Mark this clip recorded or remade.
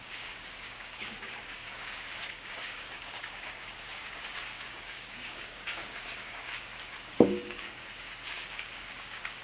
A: remade